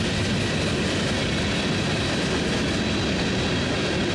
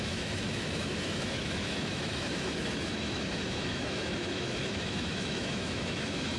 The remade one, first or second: second